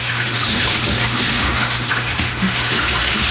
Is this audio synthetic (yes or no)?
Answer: yes